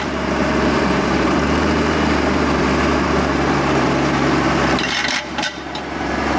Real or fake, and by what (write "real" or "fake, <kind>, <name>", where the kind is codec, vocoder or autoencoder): fake, vocoder, BigVGAN v2